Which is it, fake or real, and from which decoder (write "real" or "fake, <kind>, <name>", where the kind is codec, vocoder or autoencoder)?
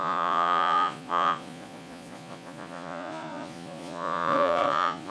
fake, vocoder, Vocos